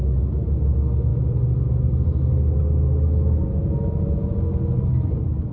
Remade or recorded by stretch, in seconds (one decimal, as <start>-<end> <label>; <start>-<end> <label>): 0.0-5.5 recorded